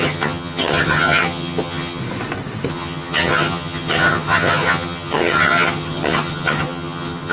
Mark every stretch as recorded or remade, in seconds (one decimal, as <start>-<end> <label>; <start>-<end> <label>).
0.0-2.0 remade; 2.0-2.7 recorded; 2.7-7.3 remade